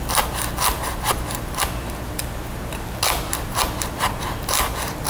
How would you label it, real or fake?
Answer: real